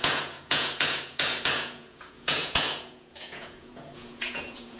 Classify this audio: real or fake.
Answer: fake